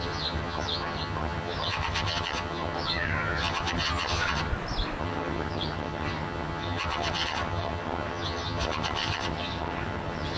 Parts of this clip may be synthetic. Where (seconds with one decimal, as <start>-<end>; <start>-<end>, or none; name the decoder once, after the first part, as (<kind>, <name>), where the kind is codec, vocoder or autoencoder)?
0.0-4.5 (vocoder, HiFi-GAN); 5.0-10.4